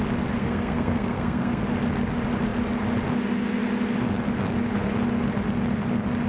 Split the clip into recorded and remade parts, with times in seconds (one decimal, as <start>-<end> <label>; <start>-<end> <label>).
0.0-0.4 recorded; 0.4-1.6 remade; 1.6-6.3 recorded